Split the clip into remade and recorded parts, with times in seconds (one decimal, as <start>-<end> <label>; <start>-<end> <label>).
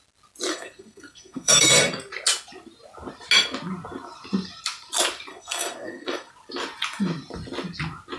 0.0-0.5 recorded; 0.5-1.9 remade; 1.9-5.3 recorded; 5.3-6.3 remade; 6.3-8.2 recorded